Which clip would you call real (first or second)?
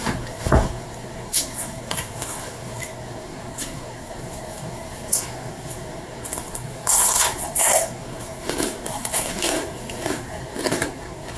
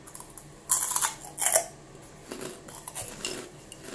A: second